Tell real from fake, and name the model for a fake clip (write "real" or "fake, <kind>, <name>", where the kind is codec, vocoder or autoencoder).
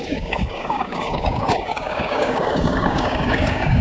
fake, codec, DAC